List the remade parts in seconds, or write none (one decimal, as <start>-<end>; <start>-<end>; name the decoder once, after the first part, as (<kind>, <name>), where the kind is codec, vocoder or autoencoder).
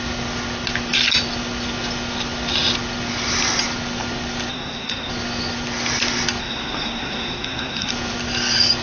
4.5-5.1 (codec, SNAC); 6.4-7.9